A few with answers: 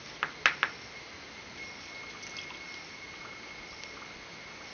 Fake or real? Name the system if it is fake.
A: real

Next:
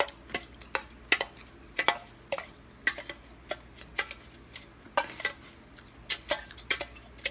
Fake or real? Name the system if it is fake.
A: real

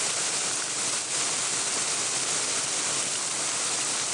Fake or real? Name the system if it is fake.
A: real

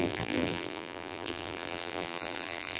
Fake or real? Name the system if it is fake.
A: fake, vocoder, BigVGAN v2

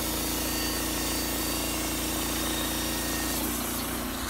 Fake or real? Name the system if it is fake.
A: real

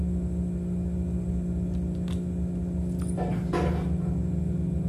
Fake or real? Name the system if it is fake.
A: real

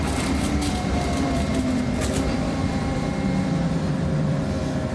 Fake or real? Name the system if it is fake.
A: fake, vocoder, BigVGAN v2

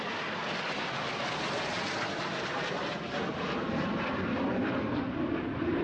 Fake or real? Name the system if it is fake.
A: real